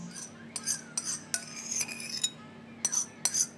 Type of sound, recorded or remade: recorded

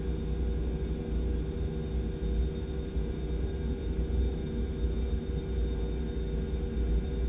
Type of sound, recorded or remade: recorded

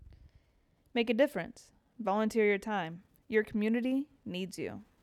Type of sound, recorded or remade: recorded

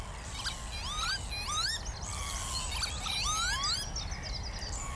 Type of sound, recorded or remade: recorded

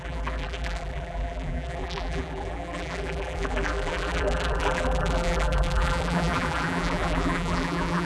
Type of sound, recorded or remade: remade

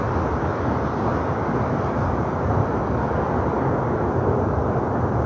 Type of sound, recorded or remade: recorded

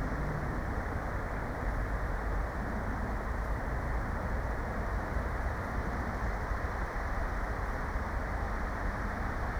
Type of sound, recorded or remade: remade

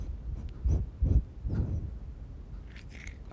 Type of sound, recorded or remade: recorded